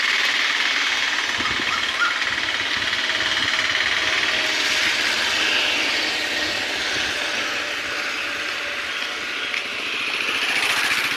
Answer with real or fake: real